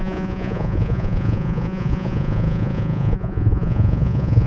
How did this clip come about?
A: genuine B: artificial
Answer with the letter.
B